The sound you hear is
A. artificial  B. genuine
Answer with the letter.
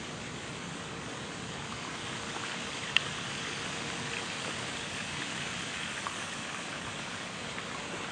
A